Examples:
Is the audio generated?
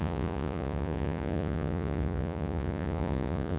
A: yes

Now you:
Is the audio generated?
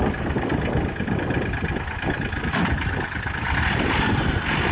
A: no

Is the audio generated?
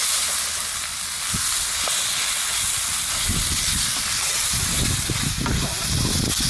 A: no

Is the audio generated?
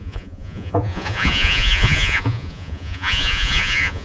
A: yes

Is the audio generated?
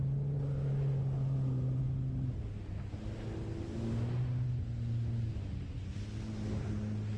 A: no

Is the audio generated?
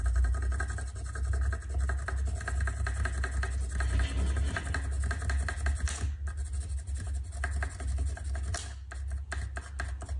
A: no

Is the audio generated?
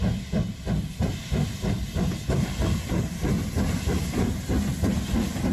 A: no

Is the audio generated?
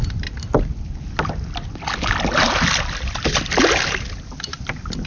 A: no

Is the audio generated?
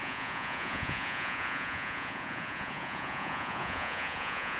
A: yes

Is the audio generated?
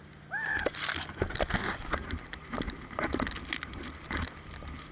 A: no